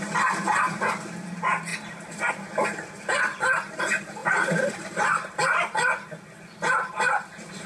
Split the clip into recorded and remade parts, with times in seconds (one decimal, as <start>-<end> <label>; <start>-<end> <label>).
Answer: 0.0-7.7 recorded